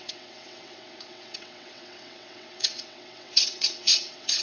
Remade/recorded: remade